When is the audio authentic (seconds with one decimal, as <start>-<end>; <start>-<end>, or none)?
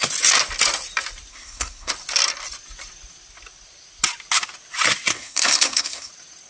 0.0-1.3; 1.9-5.1; 6.1-6.5